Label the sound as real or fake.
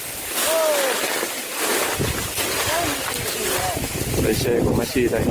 real